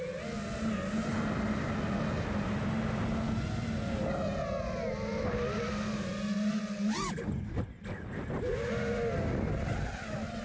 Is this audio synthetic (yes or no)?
no